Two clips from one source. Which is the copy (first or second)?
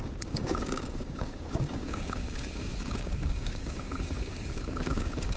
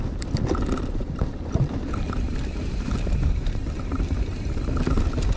first